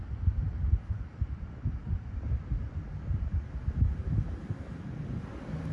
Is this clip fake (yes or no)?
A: no